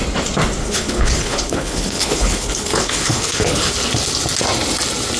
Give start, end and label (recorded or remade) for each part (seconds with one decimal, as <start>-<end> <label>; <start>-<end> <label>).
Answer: 0.0-0.6 recorded; 0.6-3.7 remade; 3.7-5.2 recorded